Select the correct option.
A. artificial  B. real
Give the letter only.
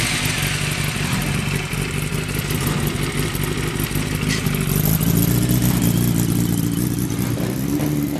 B